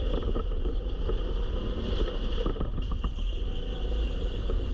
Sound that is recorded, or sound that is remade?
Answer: recorded